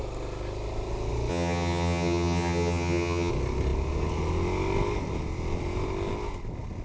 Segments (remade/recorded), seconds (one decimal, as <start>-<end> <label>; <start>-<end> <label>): 0.0-1.3 recorded; 1.3-3.3 remade; 3.3-6.8 recorded